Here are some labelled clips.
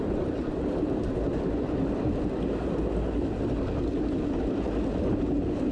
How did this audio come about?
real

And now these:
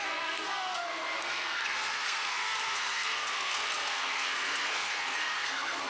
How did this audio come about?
fake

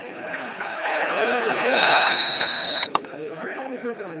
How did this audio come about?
fake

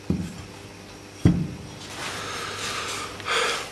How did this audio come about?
real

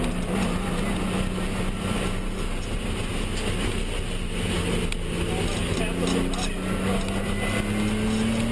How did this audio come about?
real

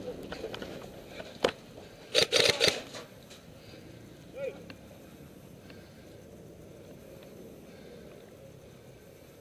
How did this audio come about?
real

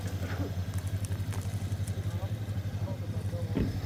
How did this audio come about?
real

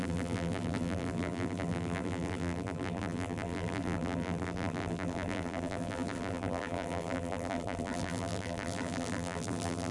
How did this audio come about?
fake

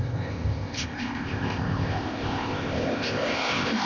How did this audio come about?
fake